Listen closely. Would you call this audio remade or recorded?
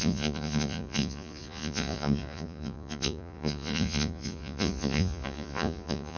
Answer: remade